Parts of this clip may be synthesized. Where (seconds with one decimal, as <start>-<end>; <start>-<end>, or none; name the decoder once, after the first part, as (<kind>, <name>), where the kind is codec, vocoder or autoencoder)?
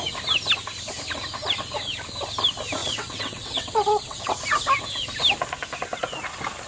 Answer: 2.8-4.3 (vocoder, WaveNeXt)